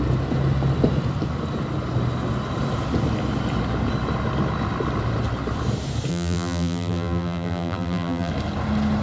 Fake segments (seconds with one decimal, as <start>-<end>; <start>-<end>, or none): 6.1-8.3